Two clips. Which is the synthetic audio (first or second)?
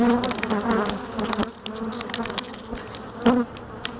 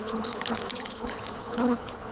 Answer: second